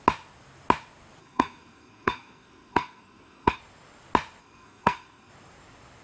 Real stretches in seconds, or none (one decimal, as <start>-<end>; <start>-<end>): 0.0-1.2; 3.6-4.4; 5.3-6.0